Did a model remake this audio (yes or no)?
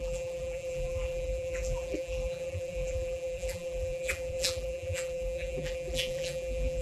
yes